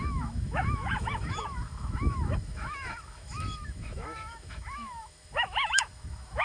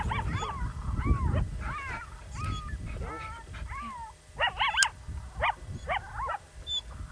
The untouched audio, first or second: second